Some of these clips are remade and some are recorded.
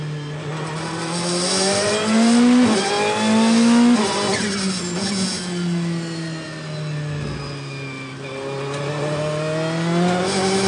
recorded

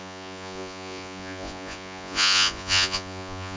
remade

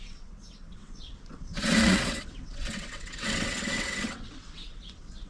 remade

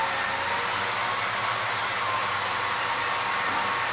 recorded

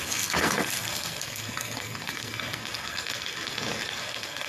remade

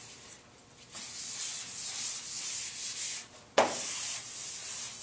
recorded